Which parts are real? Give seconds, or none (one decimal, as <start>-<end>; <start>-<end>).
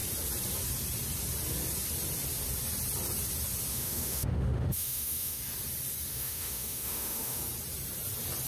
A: 0.0-3.7; 5.4-6.1; 7.4-8.5